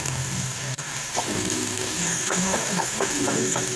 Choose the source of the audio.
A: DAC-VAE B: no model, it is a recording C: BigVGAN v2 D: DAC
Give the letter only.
D